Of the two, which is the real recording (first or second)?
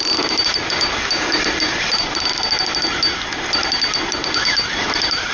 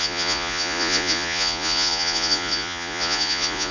first